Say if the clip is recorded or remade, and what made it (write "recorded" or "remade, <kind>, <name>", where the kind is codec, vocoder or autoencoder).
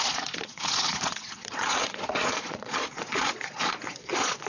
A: remade, vocoder, Vocos